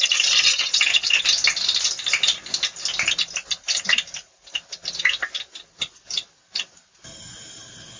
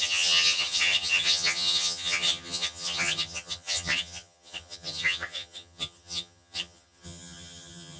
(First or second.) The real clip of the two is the first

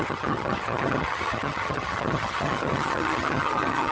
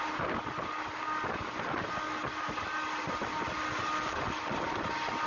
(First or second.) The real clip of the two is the second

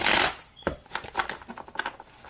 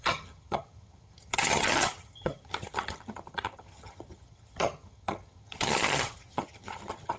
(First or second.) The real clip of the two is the first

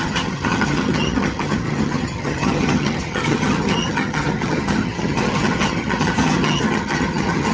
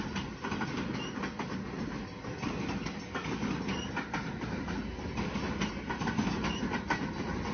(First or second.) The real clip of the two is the second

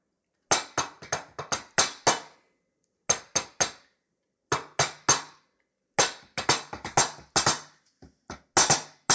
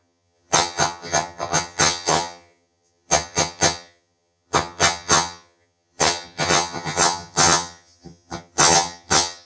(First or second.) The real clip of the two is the first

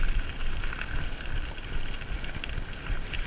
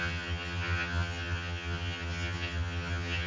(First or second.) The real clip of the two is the first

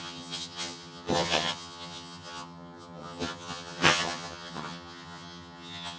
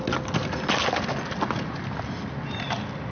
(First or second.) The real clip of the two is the second